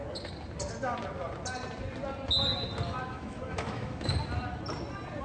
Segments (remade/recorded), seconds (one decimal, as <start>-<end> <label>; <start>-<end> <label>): 0.0-3.1 recorded; 3.1-4.1 remade; 4.1-5.2 recorded